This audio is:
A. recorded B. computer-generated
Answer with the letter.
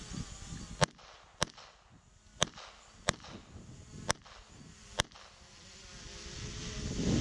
A